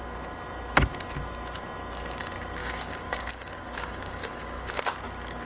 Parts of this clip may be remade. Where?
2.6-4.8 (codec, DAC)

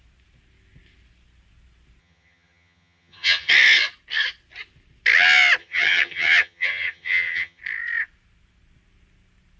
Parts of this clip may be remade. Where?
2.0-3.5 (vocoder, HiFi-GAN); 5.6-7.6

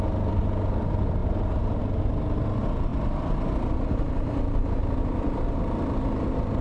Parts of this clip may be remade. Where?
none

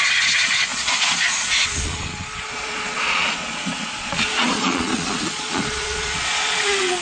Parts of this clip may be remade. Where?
0.0-7.0 (vocoder, Vocos)

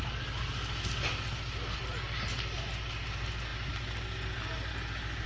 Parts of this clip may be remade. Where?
none